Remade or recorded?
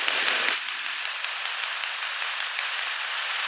recorded